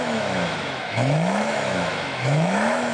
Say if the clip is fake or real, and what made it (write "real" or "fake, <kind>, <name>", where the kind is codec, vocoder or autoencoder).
fake, autoencoder, DAC-VAE